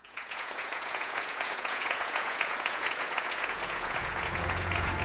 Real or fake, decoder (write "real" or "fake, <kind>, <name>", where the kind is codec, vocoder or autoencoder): fake, vocoder, Vocos